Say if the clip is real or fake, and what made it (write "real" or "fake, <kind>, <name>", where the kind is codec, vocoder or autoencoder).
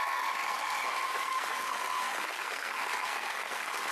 fake, codec, SNAC